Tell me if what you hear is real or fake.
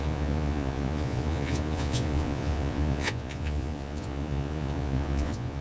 fake